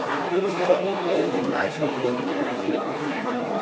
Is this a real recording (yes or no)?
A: no